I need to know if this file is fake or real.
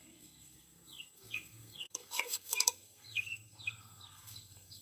fake